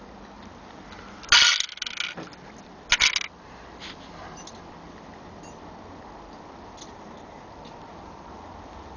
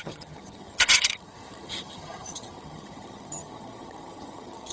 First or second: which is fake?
second